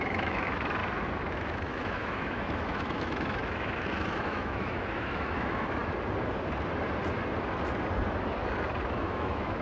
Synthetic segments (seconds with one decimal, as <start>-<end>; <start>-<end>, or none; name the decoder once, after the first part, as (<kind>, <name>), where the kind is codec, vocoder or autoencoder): 0.0-0.8 (autoencoder, DAC-VAE); 1.3-5.8; 8.9-9.6